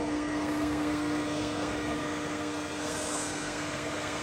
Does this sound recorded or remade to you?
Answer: remade